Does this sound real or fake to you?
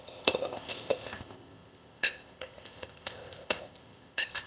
fake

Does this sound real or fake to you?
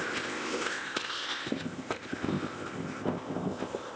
fake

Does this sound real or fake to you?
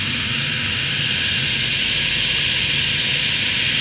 real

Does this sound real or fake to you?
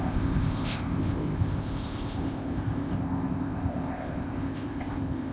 fake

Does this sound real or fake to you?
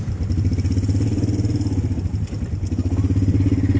real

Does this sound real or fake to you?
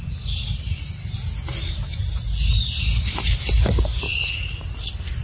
real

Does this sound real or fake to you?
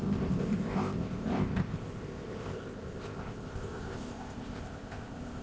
fake